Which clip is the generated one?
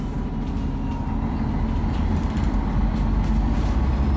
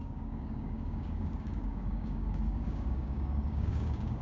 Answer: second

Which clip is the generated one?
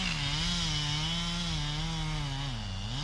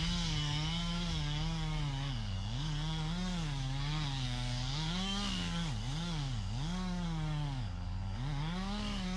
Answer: second